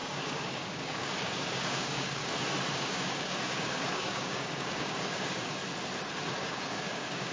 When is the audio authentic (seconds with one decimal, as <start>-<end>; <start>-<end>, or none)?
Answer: 2.2-2.7; 5.6-6.3